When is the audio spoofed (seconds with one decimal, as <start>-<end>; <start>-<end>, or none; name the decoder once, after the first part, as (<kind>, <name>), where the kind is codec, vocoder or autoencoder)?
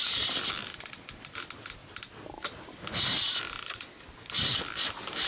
none